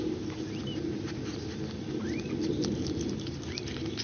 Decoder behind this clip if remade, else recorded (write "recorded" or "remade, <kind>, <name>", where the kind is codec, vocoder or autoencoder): recorded